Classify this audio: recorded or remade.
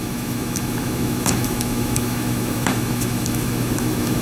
remade